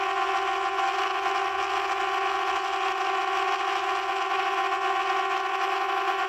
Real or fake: real